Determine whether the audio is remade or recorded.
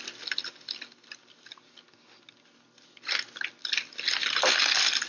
recorded